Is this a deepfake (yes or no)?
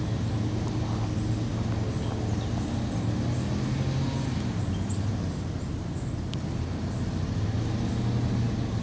no